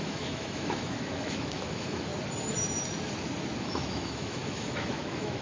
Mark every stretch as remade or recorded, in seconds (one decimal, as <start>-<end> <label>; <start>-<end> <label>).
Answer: 0.0-2.1 remade; 2.1-3.6 recorded; 3.6-5.4 remade